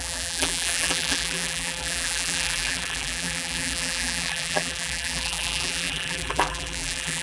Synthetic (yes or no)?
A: yes